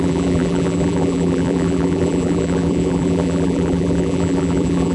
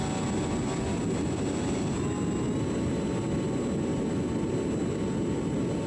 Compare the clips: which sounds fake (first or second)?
first